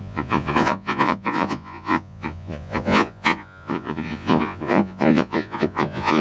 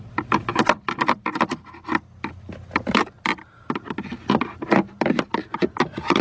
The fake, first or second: first